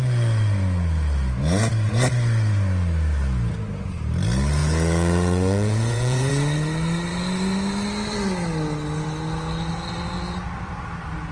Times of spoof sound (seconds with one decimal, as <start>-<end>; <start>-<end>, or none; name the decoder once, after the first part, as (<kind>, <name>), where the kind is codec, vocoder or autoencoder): 4.6-6.3 (vocoder, Vocos)